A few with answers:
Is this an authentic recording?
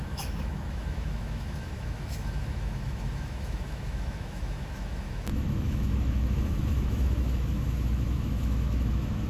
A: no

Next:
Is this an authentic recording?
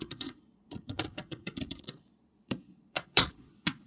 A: no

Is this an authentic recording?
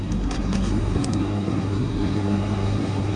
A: no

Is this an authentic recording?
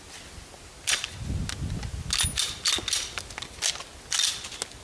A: yes